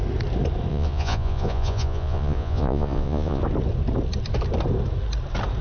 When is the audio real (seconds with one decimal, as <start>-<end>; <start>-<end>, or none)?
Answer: 0.0-0.7; 3.4-5.6